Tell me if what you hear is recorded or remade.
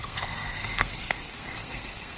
remade